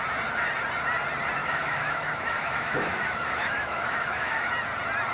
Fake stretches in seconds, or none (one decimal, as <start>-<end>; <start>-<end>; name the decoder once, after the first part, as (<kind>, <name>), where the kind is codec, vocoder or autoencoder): 1.4-4.5 (autoencoder, DAC-VAE)